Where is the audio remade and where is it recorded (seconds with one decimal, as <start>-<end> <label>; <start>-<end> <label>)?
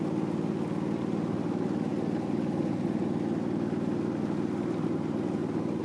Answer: 0.0-5.8 recorded